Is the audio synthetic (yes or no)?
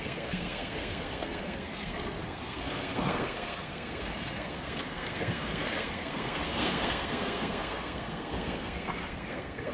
yes